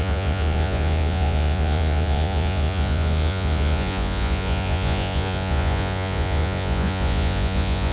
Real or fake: fake